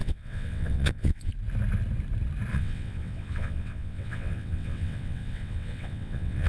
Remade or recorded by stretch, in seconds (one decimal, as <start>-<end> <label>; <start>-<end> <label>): 0.0-1.3 remade; 1.3-2.5 recorded; 2.5-6.5 remade